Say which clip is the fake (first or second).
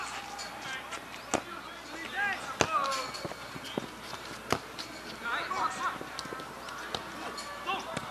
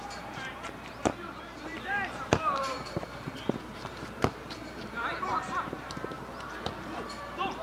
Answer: second